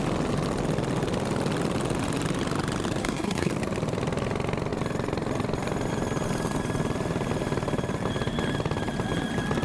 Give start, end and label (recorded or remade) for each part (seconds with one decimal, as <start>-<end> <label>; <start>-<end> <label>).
0.0-3.0 recorded; 3.0-3.5 remade; 3.5-9.6 recorded